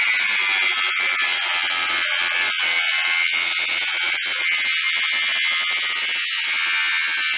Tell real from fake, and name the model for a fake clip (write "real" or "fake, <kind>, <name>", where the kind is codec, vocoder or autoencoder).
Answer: real